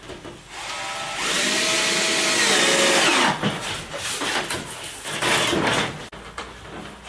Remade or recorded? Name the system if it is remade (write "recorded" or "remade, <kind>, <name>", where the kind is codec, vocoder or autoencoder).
recorded